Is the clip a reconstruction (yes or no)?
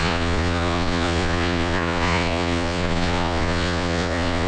yes